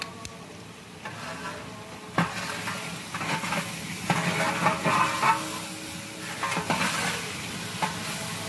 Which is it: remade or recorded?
recorded